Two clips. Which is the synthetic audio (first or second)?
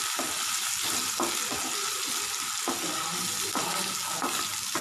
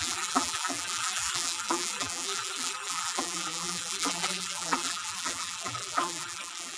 second